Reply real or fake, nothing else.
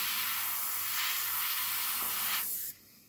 real